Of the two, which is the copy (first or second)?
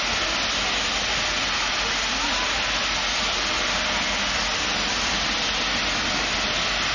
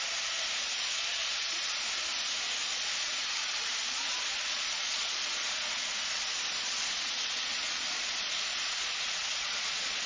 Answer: second